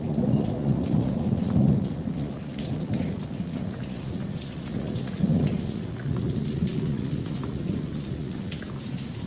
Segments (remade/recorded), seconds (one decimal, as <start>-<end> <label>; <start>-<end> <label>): 0.0-9.3 remade

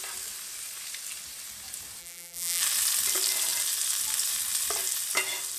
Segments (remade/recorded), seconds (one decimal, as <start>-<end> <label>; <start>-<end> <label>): 0.0-2.0 recorded; 2.0-2.6 remade; 2.6-5.6 recorded

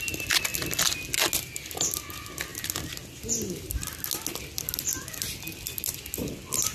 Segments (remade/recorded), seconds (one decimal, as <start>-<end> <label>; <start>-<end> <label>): 0.0-6.7 recorded

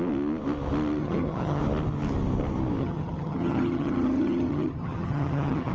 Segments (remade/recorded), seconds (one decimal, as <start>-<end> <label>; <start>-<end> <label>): 0.0-1.0 recorded; 1.0-1.6 remade; 1.6-2.8 recorded; 2.8-5.7 remade

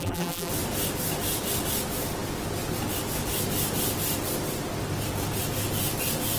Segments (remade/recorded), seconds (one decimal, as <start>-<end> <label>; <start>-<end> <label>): 0.0-0.5 remade; 0.5-6.4 recorded

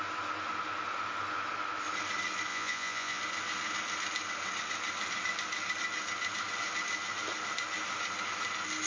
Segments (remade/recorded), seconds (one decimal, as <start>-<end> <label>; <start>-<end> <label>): 0.0-2.5 recorded; 2.5-3.2 remade; 3.2-8.9 recorded

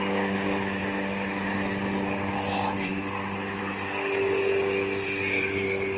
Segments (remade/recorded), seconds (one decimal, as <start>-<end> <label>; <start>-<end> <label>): 0.0-6.0 recorded

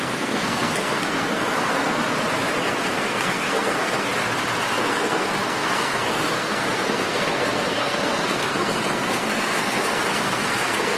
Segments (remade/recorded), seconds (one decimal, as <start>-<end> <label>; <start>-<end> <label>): 0.0-2.0 remade; 2.0-2.6 recorded; 2.6-4.1 remade; 4.1-4.8 recorded; 4.8-11.0 remade